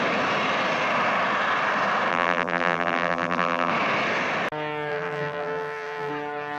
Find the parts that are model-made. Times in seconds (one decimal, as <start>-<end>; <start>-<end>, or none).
2.1-3.7; 4.9-6.1